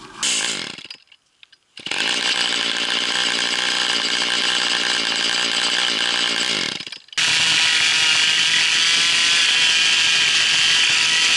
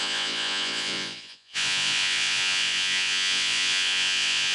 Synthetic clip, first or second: second